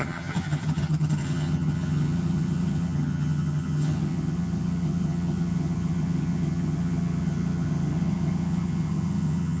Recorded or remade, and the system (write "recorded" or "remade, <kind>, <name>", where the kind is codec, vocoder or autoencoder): remade, vocoder, HiFi-GAN